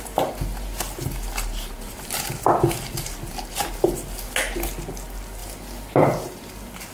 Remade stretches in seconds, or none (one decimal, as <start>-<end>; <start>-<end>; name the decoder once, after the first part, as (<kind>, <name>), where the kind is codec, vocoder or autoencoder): 5.4-6.5 (vocoder, BigVGAN v2)